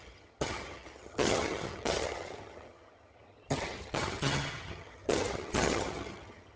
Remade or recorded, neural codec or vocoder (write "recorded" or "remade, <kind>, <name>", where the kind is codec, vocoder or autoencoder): remade, vocoder, HiFi-GAN